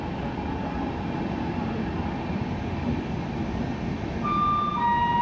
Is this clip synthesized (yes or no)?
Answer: no